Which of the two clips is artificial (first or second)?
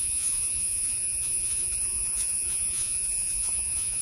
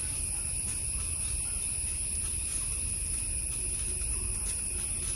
first